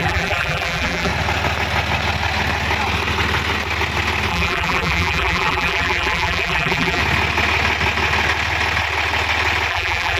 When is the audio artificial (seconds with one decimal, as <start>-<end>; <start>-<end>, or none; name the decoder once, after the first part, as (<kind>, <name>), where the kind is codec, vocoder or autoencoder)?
0.0-1.1 (vocoder, BigVGAN v2); 4.3-7.0; 9.7-10.2